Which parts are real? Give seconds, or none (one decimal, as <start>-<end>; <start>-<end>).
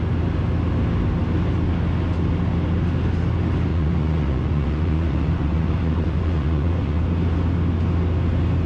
0.0-3.7; 7.0-8.7